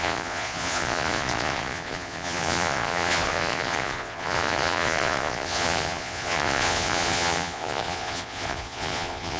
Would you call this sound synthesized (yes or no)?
yes